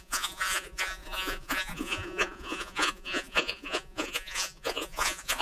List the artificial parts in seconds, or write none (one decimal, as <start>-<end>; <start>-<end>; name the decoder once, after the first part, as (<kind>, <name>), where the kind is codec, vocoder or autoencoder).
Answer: 0.0-5.4 (vocoder, Vocos)